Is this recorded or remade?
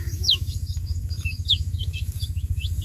remade